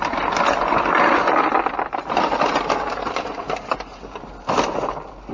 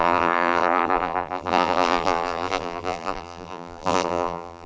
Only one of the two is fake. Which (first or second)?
second